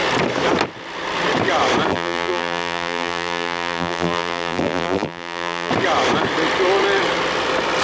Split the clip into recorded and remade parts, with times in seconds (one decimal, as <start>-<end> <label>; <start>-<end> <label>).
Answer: 0.0-1.9 recorded; 1.9-5.7 remade; 5.7-7.8 recorded